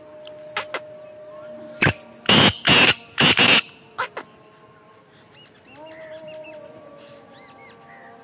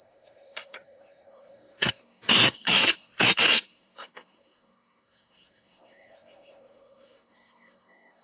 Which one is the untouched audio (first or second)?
first